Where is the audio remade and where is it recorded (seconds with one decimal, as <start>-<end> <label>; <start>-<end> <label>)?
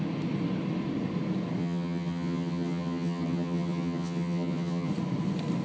0.0-1.6 recorded; 1.6-4.9 remade; 4.9-5.6 recorded